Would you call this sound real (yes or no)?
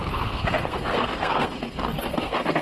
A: no